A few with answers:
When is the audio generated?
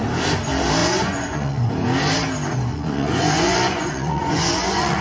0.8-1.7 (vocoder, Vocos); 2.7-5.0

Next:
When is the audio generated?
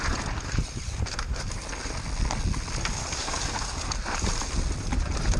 0.0-1.6 (vocoder, BigVGAN v2); 4.8-5.4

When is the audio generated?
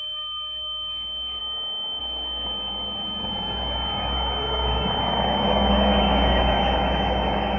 0.0-1.4 (codec, DAC); 2.0-7.6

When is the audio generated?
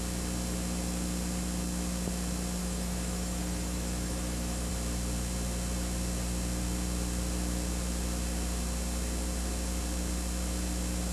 2.6-4.7 (autoencoder, DAC-VAE)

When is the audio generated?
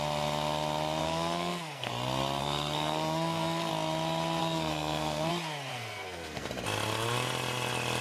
1.0-1.9 (codec, SNAC); 2.4-3.7; 4.4-5.3; 5.7-6.5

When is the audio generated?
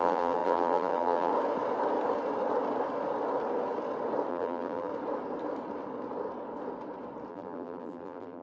0.0-1.3 (vocoder, BigVGAN v2); 4.3-4.9; 7.3-8.4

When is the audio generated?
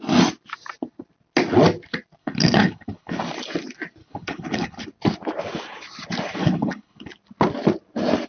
2.2-3.2 (codec, HILCodec); 4.0-4.9; 6.4-7.1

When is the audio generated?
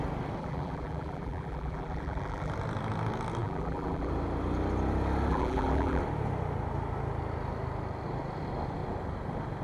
0.4-2.5 (vocoder, BigVGAN v2); 3.4-4.1; 5.3-6.0